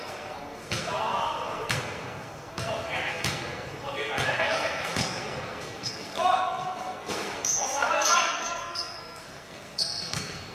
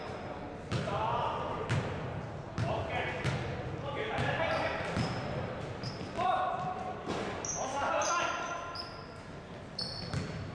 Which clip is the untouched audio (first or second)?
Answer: second